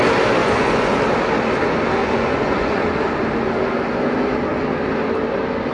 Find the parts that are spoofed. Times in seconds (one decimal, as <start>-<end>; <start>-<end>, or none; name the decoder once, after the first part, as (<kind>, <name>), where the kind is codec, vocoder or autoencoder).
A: 0.4-1.0 (vocoder, Vocos); 2.0-2.8